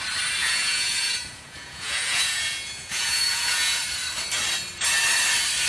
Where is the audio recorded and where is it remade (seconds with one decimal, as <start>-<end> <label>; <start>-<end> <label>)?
0.0-0.4 recorded; 0.4-3.8 remade; 3.8-5.7 recorded